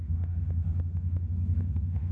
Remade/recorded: remade